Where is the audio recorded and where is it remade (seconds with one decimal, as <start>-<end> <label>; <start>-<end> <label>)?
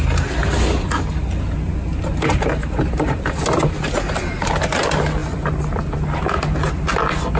0.0-7.4 recorded